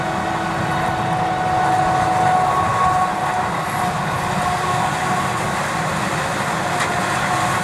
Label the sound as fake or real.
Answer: real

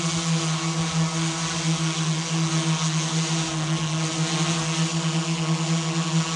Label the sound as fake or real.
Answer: real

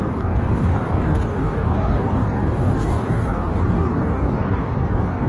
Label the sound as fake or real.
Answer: fake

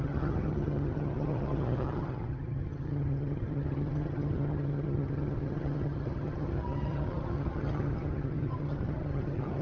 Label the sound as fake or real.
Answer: fake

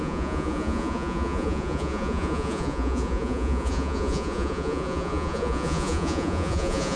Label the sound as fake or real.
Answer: fake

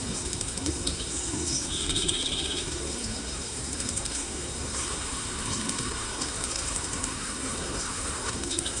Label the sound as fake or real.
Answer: fake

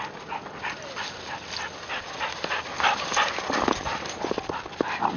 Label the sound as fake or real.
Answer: real